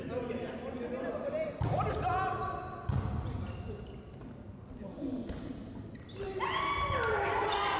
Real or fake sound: real